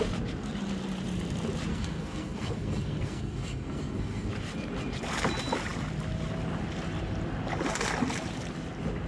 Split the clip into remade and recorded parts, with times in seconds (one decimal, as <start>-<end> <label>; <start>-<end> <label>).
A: 0.0-1.7 recorded; 1.7-4.3 remade; 4.3-9.1 recorded